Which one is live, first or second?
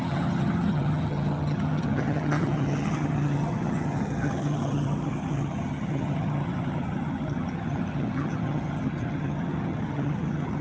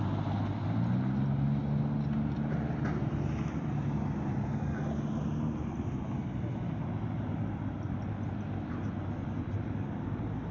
second